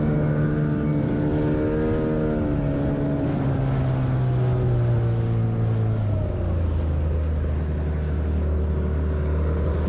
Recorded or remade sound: recorded